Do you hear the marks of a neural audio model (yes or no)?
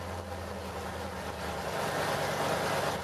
no